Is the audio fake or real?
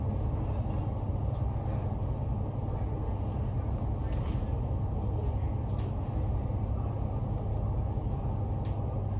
real